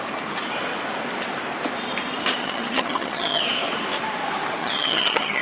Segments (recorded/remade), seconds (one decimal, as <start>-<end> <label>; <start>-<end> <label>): 0.0-2.4 recorded; 2.4-3.4 remade; 3.4-4.6 recorded; 4.6-5.4 remade